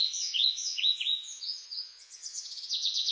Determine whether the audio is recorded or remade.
remade